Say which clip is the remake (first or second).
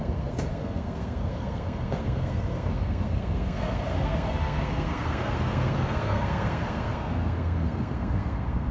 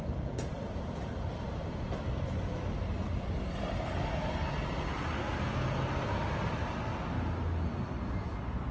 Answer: first